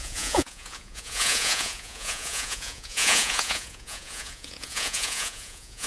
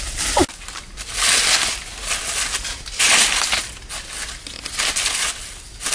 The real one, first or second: second